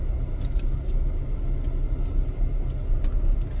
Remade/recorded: recorded